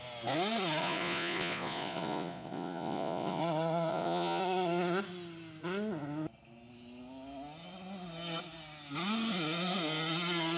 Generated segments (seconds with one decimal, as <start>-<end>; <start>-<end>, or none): 0.8-3.4; 3.9-4.4